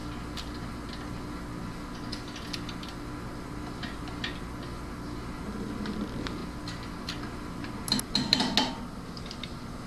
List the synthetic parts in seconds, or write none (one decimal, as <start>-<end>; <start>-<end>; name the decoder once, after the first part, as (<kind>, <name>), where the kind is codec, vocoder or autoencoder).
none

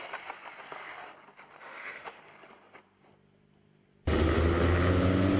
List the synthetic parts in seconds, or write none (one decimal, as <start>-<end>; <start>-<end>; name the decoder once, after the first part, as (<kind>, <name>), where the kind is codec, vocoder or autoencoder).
1.6-2.2 (autoencoder, DAC-VAE)

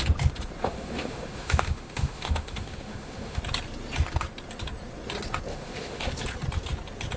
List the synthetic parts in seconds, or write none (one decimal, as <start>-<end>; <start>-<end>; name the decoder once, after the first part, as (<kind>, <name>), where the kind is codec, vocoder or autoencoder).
0.6-3.4 (autoencoder, DAC-VAE); 5.5-6.1